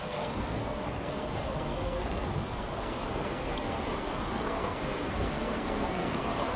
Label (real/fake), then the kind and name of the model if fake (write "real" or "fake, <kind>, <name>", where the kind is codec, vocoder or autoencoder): fake, codec, SNAC